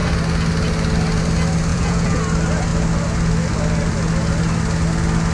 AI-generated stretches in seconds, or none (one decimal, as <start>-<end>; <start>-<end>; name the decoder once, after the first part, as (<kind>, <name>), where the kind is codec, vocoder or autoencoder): 1.7-2.2 (vocoder, Vocos)

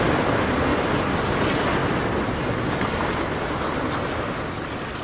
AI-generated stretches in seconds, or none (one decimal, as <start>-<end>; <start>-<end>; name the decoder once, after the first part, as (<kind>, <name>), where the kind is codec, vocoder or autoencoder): none

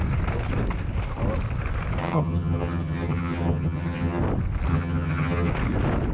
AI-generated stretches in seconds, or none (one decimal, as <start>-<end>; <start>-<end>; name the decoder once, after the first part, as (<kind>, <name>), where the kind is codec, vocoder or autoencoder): 2.0-4.2 (vocoder, HiFi-GAN); 4.7-5.5